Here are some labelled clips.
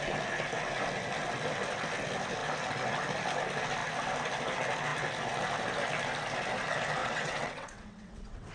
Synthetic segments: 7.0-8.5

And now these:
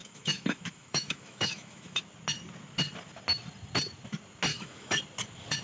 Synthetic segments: 0.0-2.0; 4.5-5.0

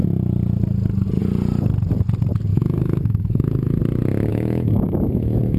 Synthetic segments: 2.5-3.8; 4.3-5.6